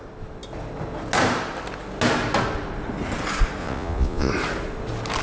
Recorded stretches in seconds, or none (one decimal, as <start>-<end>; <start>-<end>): 0.0-3.6; 4.3-5.2